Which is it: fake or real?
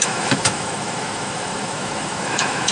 fake